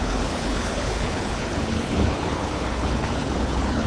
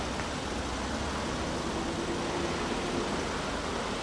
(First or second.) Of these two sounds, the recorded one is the second